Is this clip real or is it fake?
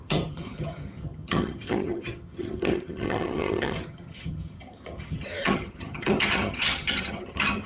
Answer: fake